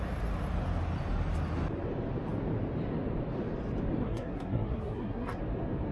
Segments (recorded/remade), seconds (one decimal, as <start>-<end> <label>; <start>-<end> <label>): 0.0-4.0 recorded; 4.0-5.4 remade; 5.4-5.9 recorded